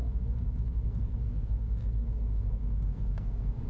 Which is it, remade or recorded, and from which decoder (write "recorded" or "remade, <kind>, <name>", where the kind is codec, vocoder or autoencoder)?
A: remade, codec, SNAC